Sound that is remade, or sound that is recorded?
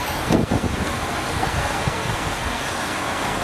remade